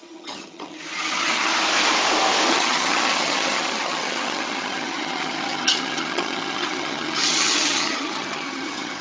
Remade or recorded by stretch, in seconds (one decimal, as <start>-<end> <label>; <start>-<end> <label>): 0.0-1.5 remade; 1.5-2.5 recorded; 2.5-9.0 remade